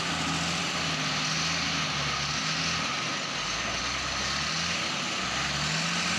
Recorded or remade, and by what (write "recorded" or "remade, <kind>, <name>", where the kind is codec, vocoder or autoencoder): recorded